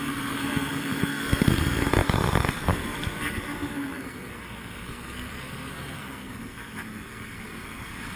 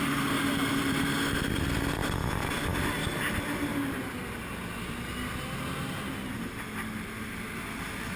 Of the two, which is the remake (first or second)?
first